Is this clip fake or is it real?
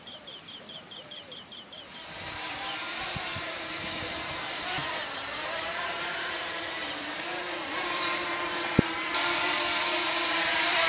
fake